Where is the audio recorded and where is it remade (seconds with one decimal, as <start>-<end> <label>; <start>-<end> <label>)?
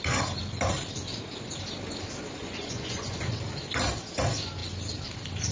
0.0-2.4 recorded; 2.4-3.3 remade; 3.3-5.5 recorded